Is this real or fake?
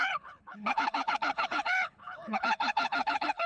fake